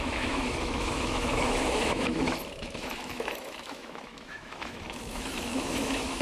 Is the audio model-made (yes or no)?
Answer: yes